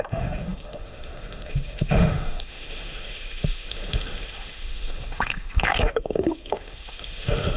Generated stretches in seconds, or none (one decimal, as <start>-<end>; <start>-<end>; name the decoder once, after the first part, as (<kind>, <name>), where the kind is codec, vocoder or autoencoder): 0.0-7.6 (autoencoder, DAC-VAE)